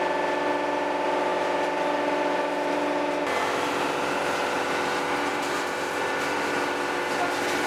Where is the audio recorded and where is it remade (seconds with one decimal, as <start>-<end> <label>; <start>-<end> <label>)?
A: 0.0-7.7 recorded